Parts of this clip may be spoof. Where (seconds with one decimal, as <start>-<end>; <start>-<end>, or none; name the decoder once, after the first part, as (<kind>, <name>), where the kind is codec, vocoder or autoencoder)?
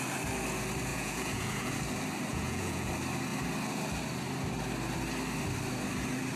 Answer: 0.9-1.7 (vocoder, Vocos); 2.3-2.9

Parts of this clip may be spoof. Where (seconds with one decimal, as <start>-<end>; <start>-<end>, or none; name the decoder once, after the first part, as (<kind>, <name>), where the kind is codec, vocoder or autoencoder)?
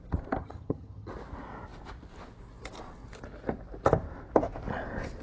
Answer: 0.4-1.1 (vocoder, HiFi-GAN)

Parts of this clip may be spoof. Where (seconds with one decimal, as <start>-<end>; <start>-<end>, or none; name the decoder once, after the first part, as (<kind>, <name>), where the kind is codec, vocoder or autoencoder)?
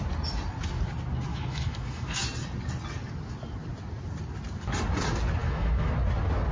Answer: 1.3-2.2 (autoencoder, DAC-VAE); 5.4-5.9